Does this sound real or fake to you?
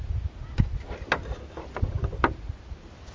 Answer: real